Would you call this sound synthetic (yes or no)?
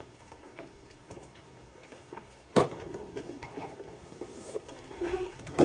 yes